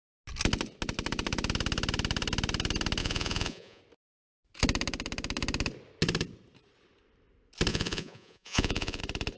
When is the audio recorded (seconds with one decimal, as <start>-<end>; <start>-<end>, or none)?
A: 0.0-3.0; 3.8-7.7; 9.0-9.4